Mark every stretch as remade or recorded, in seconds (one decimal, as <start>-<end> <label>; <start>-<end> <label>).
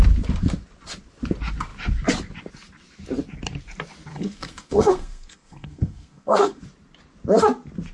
0.0-4.1 recorded; 4.1-6.6 remade; 6.6-7.9 recorded